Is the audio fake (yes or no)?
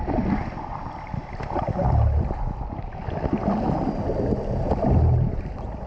no